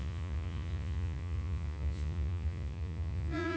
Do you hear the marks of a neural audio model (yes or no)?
yes